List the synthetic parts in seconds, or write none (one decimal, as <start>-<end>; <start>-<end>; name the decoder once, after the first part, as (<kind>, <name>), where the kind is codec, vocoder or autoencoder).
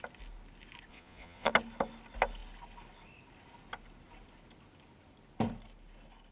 0.9-1.5 (vocoder, Vocos)